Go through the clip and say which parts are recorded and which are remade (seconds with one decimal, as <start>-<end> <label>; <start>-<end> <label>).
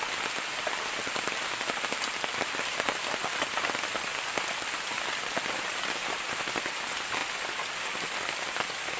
0.0-7.2 remade; 7.2-8.3 recorded; 8.3-9.0 remade